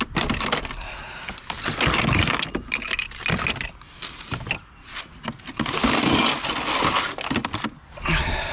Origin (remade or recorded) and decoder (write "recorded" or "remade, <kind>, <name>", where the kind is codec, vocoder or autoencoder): recorded